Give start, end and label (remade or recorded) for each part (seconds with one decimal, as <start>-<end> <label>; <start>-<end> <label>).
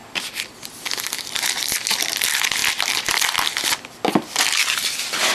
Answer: 0.0-5.3 recorded